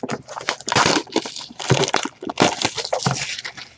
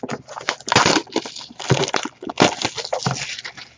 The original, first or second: second